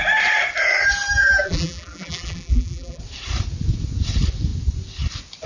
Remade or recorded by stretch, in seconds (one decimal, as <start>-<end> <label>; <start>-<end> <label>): 0.0-1.2 recorded; 1.2-3.0 remade; 3.0-5.5 recorded